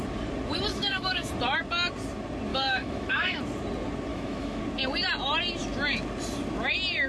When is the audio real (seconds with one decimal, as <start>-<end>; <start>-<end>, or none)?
0.0-0.7; 1.3-2.5; 3.4-4.1; 4.6-7.1